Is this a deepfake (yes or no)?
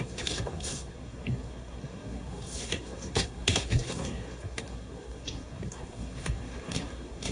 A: yes